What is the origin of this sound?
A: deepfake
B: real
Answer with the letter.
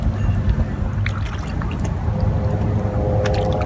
B